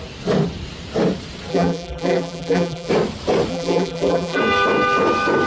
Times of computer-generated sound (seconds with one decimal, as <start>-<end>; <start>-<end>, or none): 1.5-2.9; 3.5-4.4